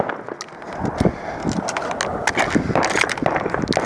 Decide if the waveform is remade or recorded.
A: recorded